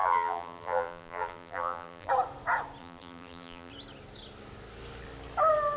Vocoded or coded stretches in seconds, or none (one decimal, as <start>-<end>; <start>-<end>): 0.0-2.1; 2.8-3.7